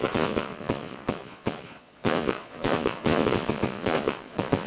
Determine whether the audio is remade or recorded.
remade